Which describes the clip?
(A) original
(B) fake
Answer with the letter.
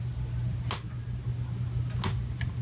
A